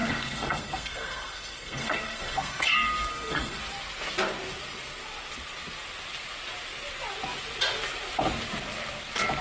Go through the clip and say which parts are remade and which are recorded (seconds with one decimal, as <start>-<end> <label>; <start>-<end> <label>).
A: 0.0-3.6 remade; 3.6-9.4 recorded